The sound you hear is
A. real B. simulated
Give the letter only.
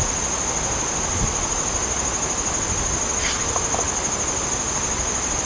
A